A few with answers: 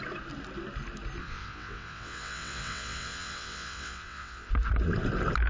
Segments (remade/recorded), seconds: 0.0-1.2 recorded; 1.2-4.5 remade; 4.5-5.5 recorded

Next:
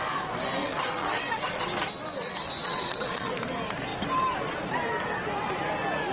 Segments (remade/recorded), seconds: 0.0-0.6 recorded; 0.6-1.3 remade; 1.3-2.6 recorded; 2.6-3.3 remade; 3.3-6.1 recorded

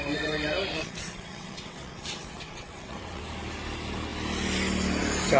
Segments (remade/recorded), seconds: 0.0-0.7 recorded; 0.7-3.2 remade; 3.2-5.4 recorded

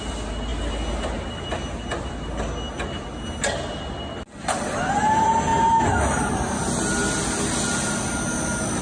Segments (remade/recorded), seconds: 0.0-8.8 recorded

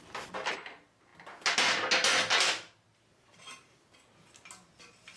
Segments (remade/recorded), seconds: 0.0-5.2 recorded

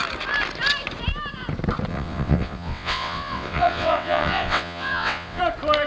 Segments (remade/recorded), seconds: 0.0-1.9 recorded; 1.9-5.4 remade; 5.4-5.9 recorded